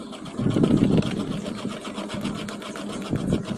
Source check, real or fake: real